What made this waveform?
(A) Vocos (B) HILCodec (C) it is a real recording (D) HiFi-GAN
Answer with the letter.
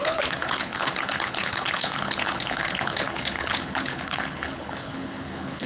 B